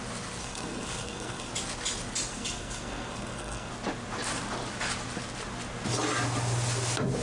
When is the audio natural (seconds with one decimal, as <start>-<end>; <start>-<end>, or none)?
0.0-0.4; 1.5-2.3; 3.7-7.2